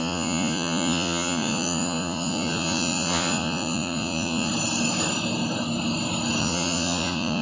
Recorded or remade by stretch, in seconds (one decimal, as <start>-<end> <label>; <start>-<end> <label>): 0.0-4.5 remade; 4.5-6.4 recorded; 6.4-7.4 remade